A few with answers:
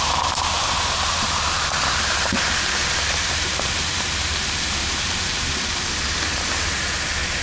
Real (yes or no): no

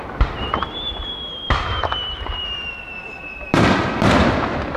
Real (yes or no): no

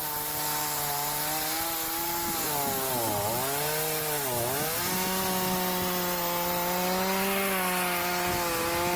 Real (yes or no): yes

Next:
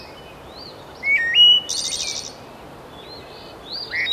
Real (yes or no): yes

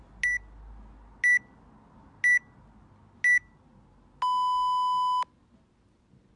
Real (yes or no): yes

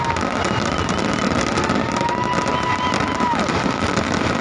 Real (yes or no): yes